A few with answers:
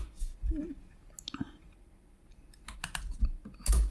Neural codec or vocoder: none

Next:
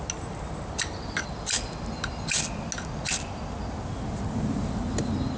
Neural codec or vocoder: none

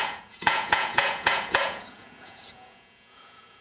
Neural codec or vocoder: vocoder, Vocos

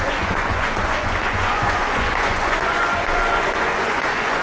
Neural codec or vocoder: vocoder, Vocos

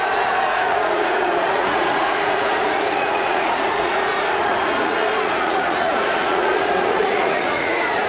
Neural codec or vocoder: vocoder, Vocos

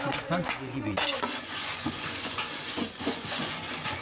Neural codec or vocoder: vocoder, Vocos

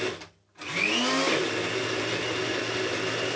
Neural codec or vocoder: none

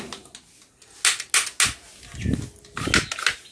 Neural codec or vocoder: none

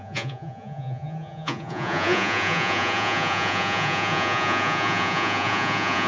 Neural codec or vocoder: vocoder, Vocos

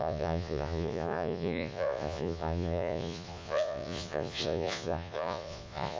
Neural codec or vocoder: vocoder, Vocos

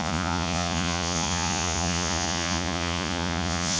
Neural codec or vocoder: vocoder, Vocos